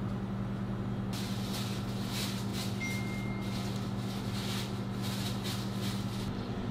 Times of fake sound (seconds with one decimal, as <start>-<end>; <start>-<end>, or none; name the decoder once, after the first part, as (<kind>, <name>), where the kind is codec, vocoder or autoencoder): none